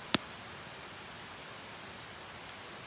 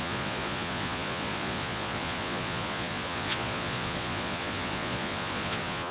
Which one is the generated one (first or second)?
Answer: second